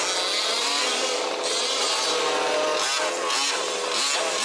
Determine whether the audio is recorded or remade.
recorded